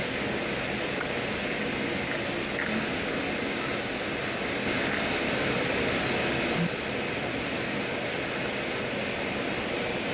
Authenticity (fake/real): real